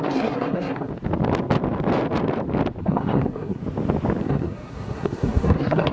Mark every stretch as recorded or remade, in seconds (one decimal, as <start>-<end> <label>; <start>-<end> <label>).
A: 0.0-0.9 remade; 0.9-2.8 recorded; 2.8-3.6 remade; 3.6-4.2 recorded; 4.2-5.9 remade